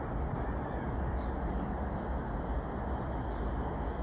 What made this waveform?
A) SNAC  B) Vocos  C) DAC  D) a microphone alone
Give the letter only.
D